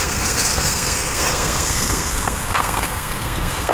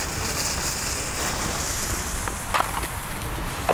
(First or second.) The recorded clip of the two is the second